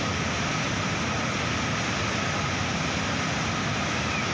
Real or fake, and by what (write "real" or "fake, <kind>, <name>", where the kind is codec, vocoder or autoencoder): real